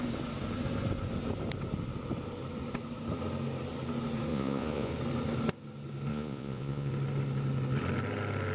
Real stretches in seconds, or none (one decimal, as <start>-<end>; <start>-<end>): 0.0-4.3; 4.9-6.1; 6.9-8.5